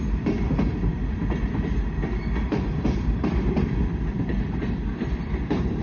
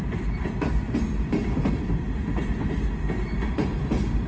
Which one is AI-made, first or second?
first